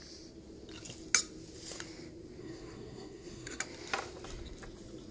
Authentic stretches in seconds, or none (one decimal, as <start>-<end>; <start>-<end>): 0.0-2.4; 3.6-5.1